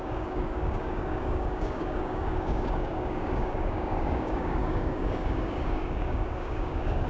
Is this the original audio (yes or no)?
no